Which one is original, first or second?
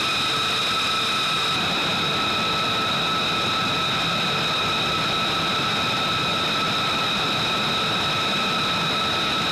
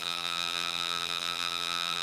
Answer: first